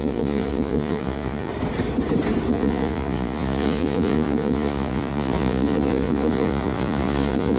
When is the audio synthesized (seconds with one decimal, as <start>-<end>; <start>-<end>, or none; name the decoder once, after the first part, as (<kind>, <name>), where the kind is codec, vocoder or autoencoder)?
0.0-1.5 (vocoder, Vocos); 2.5-7.6